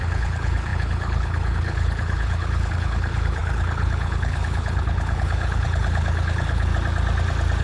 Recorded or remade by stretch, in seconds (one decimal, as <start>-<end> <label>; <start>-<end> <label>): 0.0-6.7 remade; 6.7-7.6 recorded